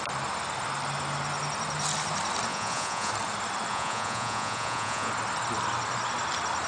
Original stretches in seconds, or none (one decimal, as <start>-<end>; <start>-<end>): 0.0-2.5; 3.1-3.7; 5.1-6.7